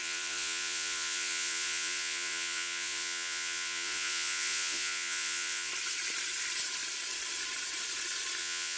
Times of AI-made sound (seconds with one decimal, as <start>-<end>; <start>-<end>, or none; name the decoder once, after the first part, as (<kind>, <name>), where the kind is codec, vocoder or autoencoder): 0.0-5.7 (vocoder, Vocos); 8.4-8.8